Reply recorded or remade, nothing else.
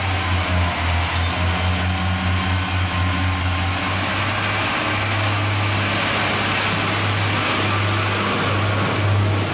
recorded